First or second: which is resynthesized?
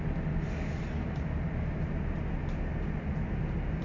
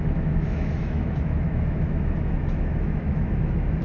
second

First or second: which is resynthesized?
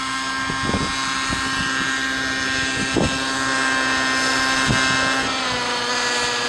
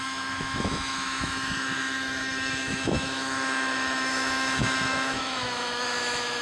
second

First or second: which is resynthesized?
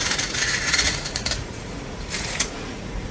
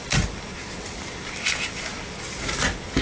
first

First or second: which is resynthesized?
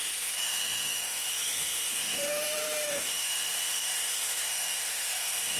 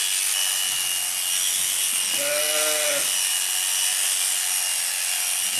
first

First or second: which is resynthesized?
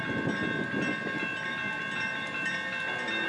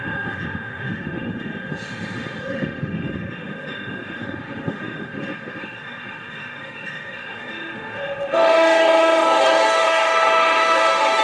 second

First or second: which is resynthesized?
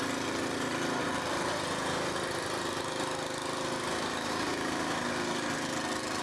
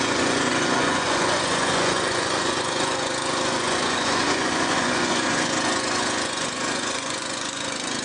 second